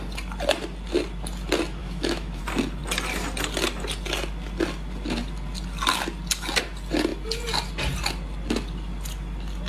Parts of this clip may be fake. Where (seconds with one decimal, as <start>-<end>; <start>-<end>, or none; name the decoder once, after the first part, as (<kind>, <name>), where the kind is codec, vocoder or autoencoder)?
1.8-2.4 (autoencoder, DAC-VAE)